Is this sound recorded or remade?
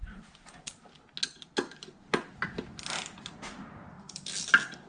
recorded